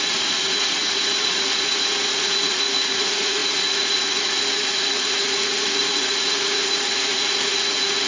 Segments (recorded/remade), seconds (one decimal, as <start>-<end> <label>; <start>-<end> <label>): 0.0-8.1 remade